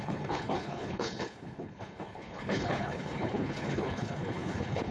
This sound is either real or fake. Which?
fake